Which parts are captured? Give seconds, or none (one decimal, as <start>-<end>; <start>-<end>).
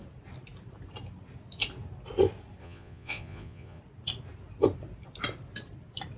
0.0-2.6; 3.8-6.2